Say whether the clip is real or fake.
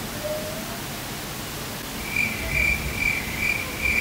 real